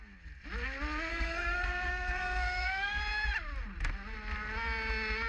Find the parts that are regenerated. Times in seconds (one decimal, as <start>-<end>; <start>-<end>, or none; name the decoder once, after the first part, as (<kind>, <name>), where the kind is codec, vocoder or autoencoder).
1.1-3.0 (codec, SNAC)

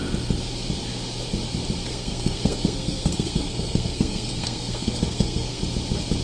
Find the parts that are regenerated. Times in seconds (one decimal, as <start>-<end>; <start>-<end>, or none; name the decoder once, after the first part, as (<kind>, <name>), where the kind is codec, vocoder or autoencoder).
1.9-5.6 (codec, SNAC)

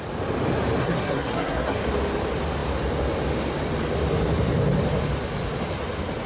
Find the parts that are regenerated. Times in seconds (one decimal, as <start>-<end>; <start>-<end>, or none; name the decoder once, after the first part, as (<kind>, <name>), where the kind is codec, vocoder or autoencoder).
0.8-1.8 (codec, SNAC)

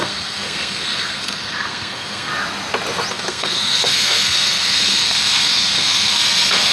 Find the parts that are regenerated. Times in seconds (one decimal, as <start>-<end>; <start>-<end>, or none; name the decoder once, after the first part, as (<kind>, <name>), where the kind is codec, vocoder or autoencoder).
0.0-2.3 (codec, SNAC); 3.1-6.7

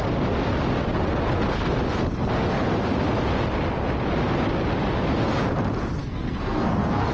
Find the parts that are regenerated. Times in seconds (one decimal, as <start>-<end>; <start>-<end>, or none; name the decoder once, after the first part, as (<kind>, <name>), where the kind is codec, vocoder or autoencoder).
6.0-7.1 (codec, SNAC)

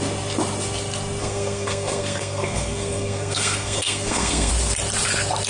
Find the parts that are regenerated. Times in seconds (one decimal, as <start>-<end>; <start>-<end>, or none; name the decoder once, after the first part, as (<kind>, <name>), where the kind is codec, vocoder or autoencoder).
1.2-4.5 (codec, SNAC)

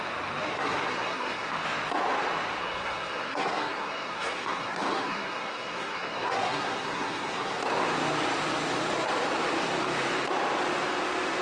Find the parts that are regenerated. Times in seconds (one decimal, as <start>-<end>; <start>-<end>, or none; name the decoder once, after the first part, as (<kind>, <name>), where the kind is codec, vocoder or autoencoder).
0.5-1.5 (codec, SNAC); 2.6-7.6